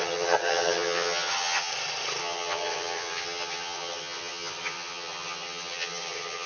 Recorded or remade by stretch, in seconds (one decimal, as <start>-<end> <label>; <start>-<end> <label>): 0.0-1.7 remade; 1.7-2.2 recorded; 2.2-6.5 remade